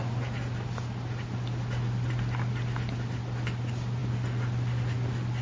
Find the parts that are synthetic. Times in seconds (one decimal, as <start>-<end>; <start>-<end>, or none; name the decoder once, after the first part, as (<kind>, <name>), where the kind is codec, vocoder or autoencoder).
none